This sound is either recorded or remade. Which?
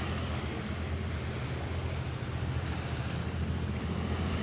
recorded